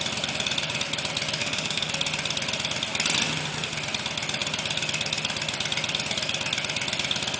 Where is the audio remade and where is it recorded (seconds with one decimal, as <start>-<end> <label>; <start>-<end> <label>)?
0.0-1.4 recorded; 1.4-1.9 remade; 1.9-7.4 recorded